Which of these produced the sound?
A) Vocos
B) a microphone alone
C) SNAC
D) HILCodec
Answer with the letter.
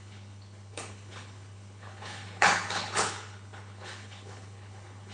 D